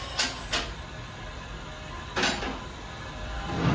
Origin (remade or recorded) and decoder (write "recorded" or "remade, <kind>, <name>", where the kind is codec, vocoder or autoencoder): recorded